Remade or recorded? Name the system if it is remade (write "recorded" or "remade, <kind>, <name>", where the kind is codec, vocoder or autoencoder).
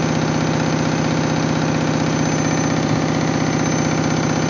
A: recorded